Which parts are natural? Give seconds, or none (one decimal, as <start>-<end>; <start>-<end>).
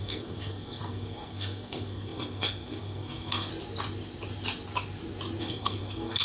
3.5-5.4